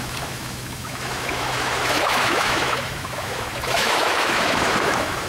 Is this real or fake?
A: fake